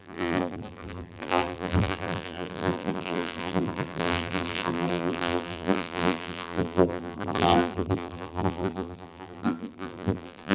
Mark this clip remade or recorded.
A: remade